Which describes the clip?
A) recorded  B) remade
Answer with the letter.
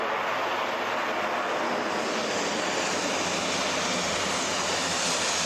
A